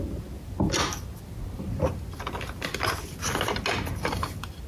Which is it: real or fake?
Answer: real